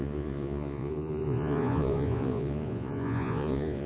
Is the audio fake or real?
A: fake